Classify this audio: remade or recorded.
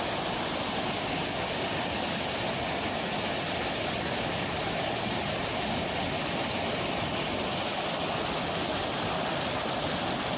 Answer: recorded